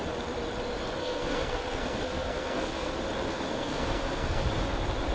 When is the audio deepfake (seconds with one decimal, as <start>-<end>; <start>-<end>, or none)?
1.0-2.9; 3.5-4.4